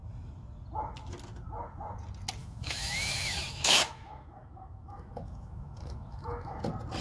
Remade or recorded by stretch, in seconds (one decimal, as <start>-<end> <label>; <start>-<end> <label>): 0.0-2.4 recorded; 2.4-6.6 remade; 6.6-7.0 recorded